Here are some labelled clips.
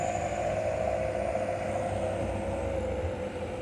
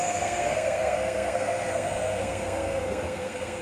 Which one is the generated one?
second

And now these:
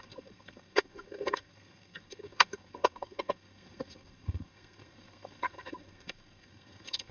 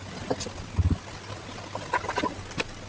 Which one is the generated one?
first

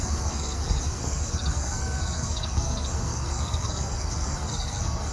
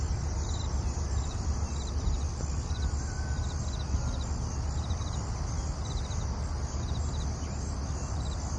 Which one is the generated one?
first